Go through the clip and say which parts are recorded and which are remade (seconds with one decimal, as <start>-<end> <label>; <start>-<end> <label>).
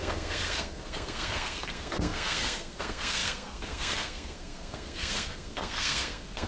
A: 0.0-6.5 remade